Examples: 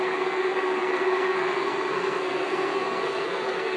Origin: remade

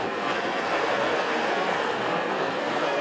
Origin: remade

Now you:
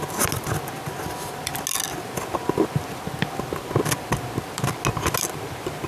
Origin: recorded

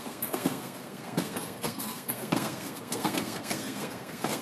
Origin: remade